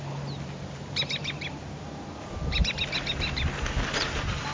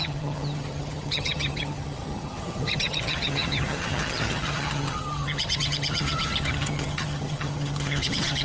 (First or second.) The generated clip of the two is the second